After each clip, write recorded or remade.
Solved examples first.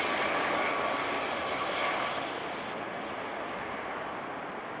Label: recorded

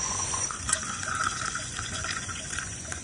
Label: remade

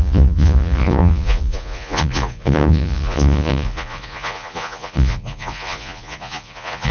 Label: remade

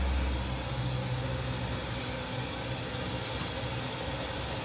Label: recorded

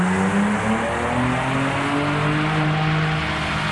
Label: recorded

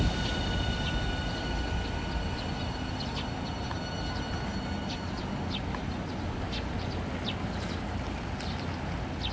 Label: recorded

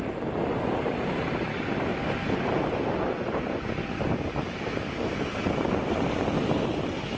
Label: recorded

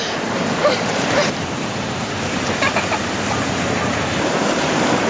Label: remade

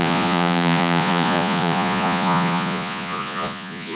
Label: remade